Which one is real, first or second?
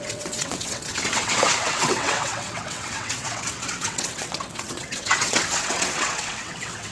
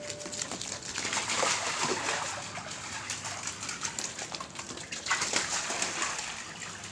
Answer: second